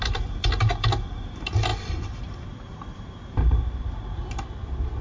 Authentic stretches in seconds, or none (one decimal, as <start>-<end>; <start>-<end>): 0.0-5.0